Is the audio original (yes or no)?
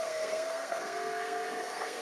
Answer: no